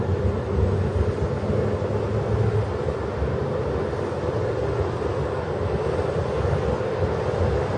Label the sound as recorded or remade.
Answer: recorded